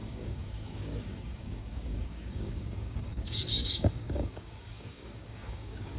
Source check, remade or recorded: remade